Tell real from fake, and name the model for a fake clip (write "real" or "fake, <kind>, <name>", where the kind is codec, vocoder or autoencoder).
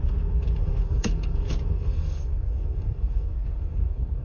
fake, codec, SNAC